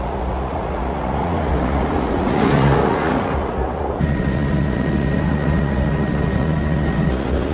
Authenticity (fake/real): fake